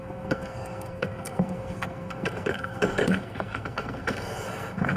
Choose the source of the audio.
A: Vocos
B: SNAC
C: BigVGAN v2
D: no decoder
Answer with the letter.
B